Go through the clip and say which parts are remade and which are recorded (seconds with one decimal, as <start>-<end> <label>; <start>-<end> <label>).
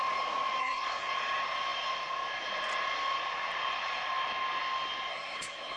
0.0-0.6 recorded; 0.6-1.1 remade; 1.1-5.1 recorded; 5.1-5.8 remade